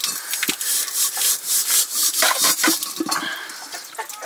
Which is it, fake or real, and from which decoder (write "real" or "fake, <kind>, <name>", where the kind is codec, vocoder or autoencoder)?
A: real